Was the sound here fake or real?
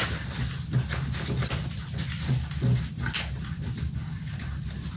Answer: real